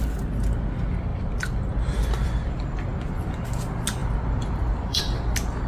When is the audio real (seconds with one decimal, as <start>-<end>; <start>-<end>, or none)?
0.0-1.1; 2.5-4.0; 5.0-5.7